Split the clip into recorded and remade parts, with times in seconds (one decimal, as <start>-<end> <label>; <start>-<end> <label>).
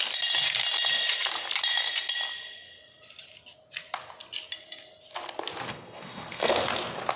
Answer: 0.0-5.7 recorded; 5.7-6.5 remade; 6.5-7.2 recorded